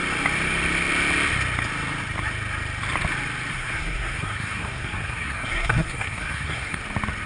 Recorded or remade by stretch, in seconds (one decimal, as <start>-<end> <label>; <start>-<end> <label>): 0.0-3.5 recorded; 3.5-6.8 remade; 6.8-7.3 recorded

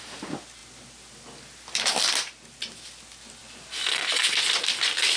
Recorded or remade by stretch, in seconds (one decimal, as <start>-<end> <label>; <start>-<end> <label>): 0.0-5.2 recorded

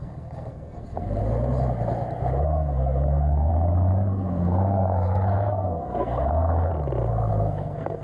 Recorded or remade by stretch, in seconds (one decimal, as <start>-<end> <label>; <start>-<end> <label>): 0.0-1.2 remade; 1.2-2.4 recorded; 2.4-3.5 remade; 3.5-4.1 recorded; 4.1-6.7 remade; 6.7-7.3 recorded; 7.3-8.0 remade

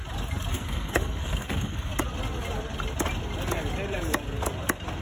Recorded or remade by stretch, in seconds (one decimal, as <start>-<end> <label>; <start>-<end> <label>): 0.0-0.5 recorded; 0.5-1.9 remade; 1.9-5.0 recorded

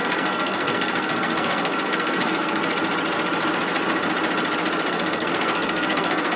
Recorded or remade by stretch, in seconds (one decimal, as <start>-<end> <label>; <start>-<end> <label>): 0.0-2.6 remade; 2.6-4.9 recorded; 4.9-6.4 remade

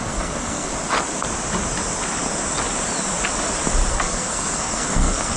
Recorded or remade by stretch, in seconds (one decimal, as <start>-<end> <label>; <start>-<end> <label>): 0.0-0.7 remade; 0.7-3.9 recorded; 3.9-5.4 remade

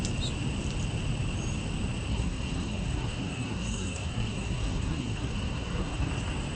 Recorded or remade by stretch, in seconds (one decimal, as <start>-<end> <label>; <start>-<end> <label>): 0.0-2.1 recorded; 2.1-6.1 remade; 6.1-6.6 recorded